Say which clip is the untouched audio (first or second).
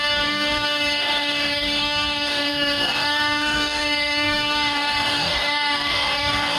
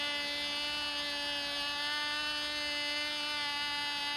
second